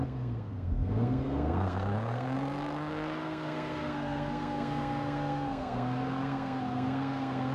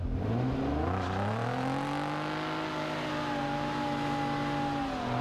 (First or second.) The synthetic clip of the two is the first